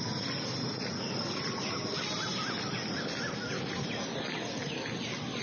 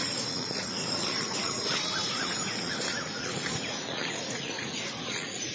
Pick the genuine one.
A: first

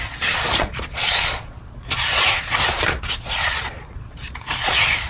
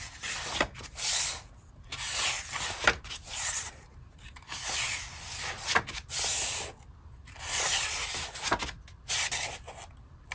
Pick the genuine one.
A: second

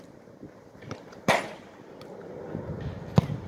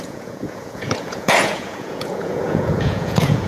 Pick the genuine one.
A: first